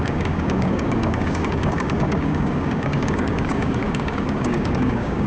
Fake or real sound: fake